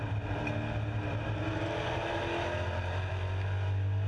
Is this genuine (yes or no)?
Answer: yes